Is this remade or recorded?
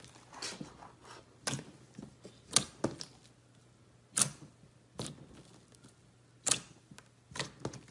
recorded